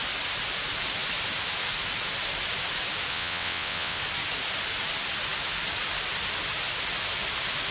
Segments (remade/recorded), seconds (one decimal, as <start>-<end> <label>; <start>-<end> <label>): 0.0-3.1 recorded; 3.1-4.0 remade; 4.0-7.7 recorded